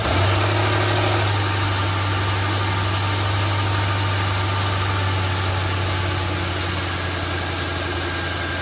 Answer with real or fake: real